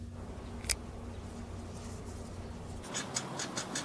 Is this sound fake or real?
real